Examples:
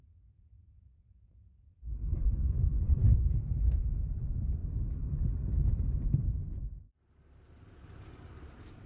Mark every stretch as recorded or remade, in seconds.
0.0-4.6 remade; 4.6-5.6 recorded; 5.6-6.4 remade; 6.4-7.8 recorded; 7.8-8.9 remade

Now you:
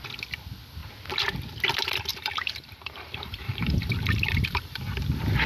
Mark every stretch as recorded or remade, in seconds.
0.0-2.1 recorded; 2.1-4.8 remade; 4.8-5.5 recorded

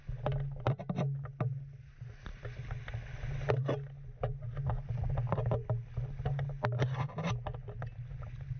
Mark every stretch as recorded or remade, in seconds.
0.0-8.6 recorded

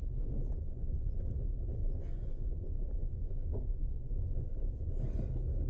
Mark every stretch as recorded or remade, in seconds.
0.0-0.6 recorded; 0.6-1.3 remade; 1.3-1.8 recorded; 1.8-4.9 remade; 4.9-5.7 recorded

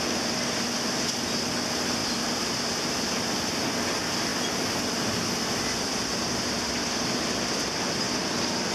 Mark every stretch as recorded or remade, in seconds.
0.0-2.0 recorded; 2.0-3.2 remade; 3.2-4.3 recorded; 4.3-7.8 remade; 7.8-8.7 recorded

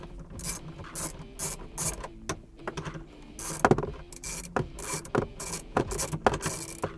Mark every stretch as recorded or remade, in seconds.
0.0-5.3 recorded; 5.3-5.9 remade; 5.9-7.0 recorded

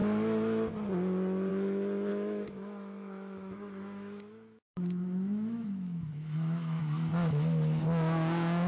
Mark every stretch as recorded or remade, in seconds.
0.0-2.1 recorded; 2.1-6.8 remade; 6.8-8.7 recorded

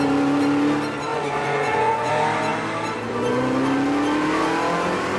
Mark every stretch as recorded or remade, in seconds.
0.0-1.1 recorded; 1.1-2.1 remade; 2.1-5.2 recorded